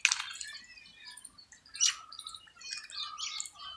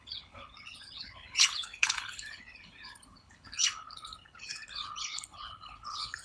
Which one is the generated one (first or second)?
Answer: second